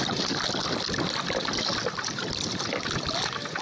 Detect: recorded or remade recorded